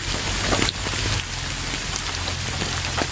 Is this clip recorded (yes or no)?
no